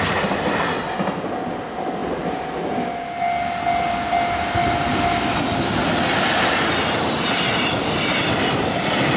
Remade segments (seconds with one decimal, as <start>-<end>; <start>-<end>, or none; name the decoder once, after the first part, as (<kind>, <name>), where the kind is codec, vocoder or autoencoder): none